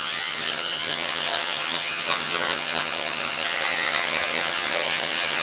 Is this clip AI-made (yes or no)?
yes